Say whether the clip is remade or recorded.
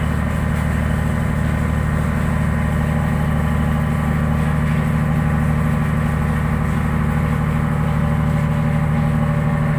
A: recorded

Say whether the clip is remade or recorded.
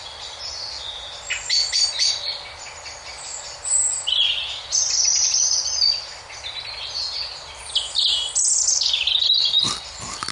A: recorded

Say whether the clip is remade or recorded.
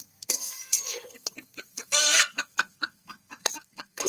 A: remade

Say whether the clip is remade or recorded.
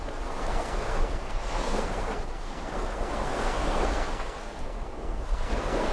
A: remade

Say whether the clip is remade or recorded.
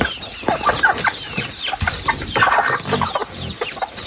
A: recorded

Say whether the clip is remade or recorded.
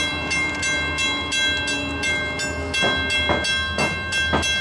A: recorded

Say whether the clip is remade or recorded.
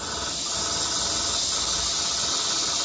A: recorded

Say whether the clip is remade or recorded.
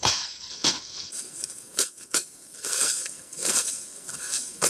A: remade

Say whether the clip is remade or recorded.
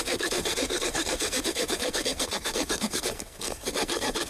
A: remade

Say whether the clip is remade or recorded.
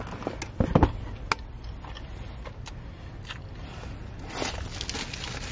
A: recorded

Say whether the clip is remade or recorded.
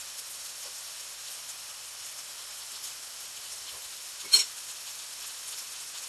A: recorded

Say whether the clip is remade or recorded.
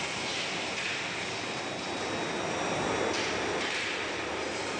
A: recorded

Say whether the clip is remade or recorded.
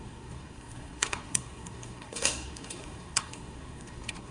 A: remade